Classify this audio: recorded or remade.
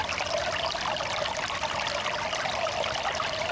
recorded